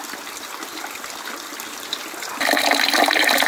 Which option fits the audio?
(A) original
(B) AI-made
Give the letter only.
A